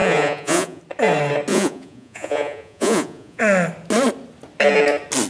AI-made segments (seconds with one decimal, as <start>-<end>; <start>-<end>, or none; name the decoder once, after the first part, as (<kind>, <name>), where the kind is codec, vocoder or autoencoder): 0.0-0.8 (vocoder, Vocos); 1.5-3.4